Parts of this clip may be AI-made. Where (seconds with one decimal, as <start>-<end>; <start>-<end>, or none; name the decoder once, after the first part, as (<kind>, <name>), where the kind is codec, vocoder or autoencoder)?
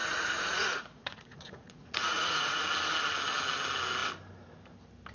0.0-2.6 (vocoder, Vocos)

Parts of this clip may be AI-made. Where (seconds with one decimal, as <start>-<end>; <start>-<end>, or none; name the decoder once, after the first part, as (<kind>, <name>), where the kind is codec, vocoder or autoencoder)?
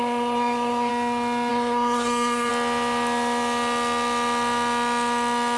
0.0-0.9 (codec, SNAC); 1.5-2.5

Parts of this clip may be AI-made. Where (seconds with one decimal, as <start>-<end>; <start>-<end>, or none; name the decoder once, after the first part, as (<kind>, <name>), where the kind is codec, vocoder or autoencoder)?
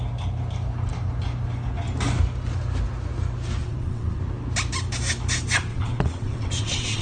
3.6-4.2 (vocoder, WaveNeXt); 5.7-7.0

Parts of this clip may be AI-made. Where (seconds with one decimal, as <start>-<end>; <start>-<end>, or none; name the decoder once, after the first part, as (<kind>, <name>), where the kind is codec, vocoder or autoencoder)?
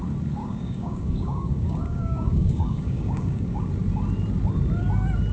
0.4-3.6 (codec, DAC)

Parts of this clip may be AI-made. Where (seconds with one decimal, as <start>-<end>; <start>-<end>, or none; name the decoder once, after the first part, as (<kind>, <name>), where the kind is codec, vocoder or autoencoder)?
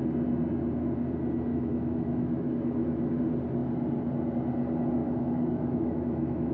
1.5-3.2 (autoencoder, DAC-VAE); 5.0-6.5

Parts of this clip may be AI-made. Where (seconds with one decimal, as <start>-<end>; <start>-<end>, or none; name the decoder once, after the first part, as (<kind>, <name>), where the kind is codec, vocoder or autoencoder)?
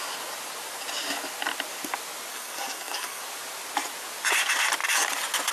2.3-3.2 (codec, SNAC)